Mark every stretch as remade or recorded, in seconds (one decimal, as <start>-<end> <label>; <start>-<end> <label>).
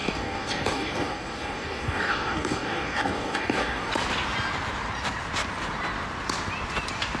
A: 0.0-3.9 remade; 3.9-7.2 recorded